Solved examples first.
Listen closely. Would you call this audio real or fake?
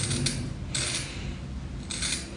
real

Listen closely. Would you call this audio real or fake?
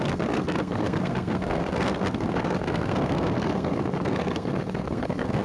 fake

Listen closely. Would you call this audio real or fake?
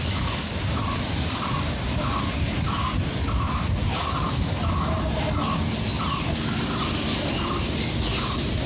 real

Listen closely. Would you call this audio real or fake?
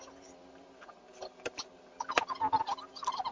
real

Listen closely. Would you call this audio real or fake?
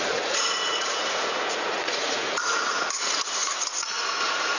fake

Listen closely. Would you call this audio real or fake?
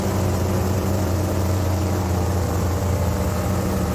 fake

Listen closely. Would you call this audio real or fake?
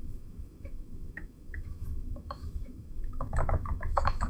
fake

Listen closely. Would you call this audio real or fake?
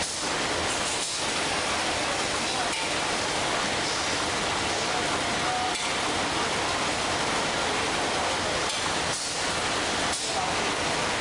real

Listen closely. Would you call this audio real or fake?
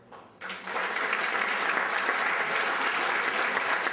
real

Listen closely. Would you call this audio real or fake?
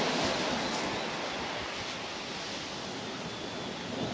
real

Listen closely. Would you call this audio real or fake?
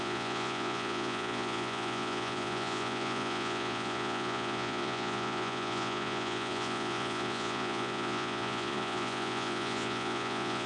fake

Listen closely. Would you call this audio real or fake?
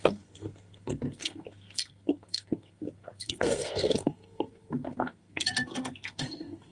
fake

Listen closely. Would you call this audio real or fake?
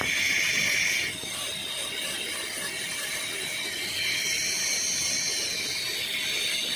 real